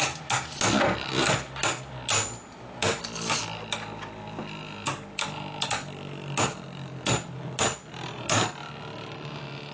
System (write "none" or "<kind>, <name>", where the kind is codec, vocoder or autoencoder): none